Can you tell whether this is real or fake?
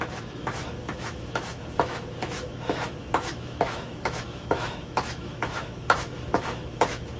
fake